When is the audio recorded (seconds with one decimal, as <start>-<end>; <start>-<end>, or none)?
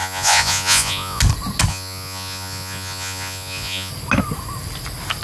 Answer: 1.2-1.7; 3.9-5.2